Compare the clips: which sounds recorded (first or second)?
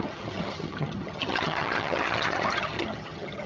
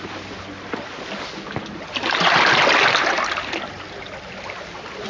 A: second